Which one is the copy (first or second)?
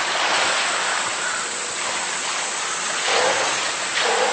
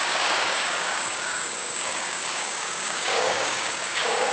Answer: second